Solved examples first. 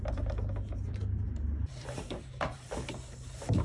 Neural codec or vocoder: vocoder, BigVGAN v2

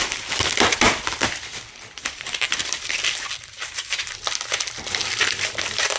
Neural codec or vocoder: vocoder, BigVGAN v2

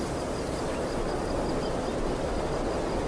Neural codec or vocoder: none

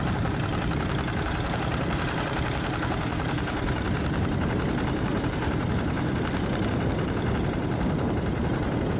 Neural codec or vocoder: vocoder, BigVGAN v2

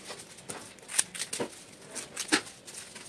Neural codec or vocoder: none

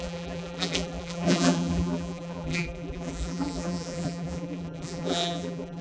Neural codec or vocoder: vocoder, BigVGAN v2